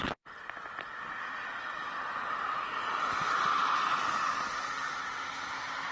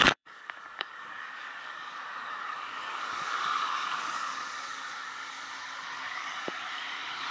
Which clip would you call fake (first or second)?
second